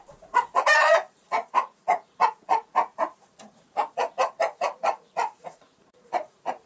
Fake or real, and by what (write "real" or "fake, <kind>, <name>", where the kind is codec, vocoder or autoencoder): fake, vocoder, Vocos